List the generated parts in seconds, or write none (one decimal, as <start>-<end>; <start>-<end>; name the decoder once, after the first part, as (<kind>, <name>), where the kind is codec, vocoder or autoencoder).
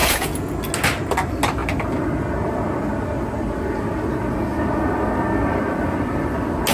0.0-0.5 (vocoder, Vocos)